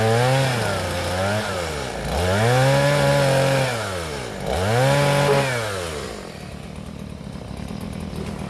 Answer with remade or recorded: recorded